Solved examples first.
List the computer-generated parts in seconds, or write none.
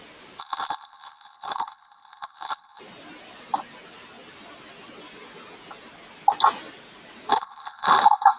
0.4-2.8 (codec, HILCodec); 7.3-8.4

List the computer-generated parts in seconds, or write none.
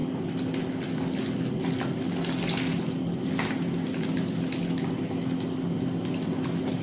none